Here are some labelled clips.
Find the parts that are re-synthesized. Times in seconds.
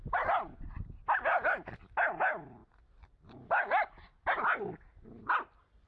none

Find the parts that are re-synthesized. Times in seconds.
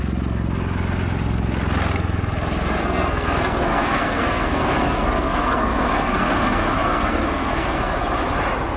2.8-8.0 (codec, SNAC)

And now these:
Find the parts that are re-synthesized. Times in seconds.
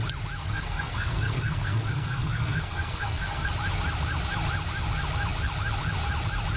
0.4-3.5 (codec, SNAC)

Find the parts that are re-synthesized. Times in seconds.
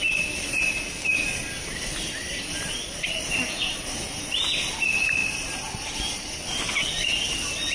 none